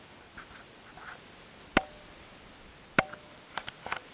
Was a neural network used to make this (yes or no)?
no